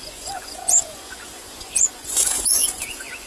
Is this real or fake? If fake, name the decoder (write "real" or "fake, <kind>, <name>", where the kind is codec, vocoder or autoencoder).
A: fake, vocoder, Vocos